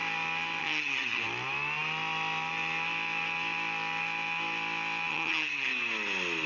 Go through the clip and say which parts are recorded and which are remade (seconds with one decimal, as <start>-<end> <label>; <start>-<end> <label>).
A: 0.0-0.6 recorded; 0.6-1.2 remade; 1.2-5.1 recorded; 5.1-5.7 remade; 5.7-6.5 recorded